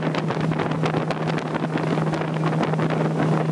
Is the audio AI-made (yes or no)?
no